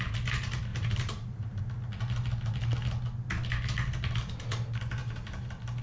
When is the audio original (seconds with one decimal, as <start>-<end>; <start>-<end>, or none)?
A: 0.0-0.7; 1.6-5.0